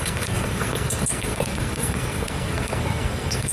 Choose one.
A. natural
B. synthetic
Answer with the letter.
B